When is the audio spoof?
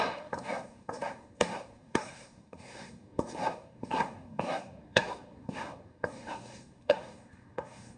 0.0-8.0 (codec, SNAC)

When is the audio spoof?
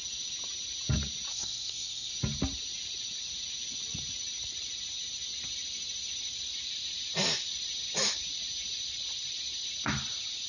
1.3-2.1 (codec, SNAC)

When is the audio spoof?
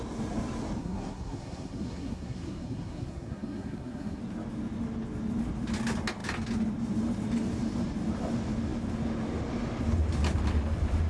0.8-4.2 (codec, SNAC)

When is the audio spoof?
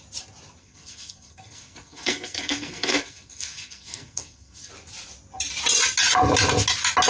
0.6-4.7 (codec, SNAC)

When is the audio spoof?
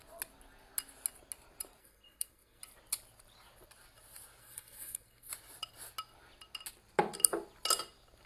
1.8-2.6 (codec, SNAC); 4.4-5.3